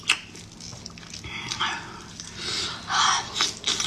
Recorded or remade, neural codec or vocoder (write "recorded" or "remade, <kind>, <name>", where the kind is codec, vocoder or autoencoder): recorded